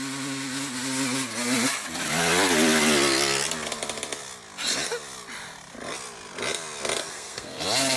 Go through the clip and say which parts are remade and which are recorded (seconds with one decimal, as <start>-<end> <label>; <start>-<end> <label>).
0.0-7.0 recorded; 7.0-7.6 remade; 7.6-8.0 recorded